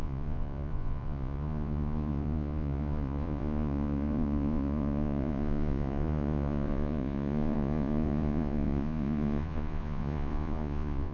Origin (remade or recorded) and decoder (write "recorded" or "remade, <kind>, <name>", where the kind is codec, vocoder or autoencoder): remade, vocoder, Vocos